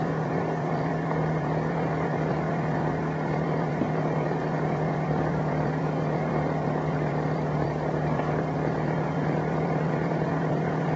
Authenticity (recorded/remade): remade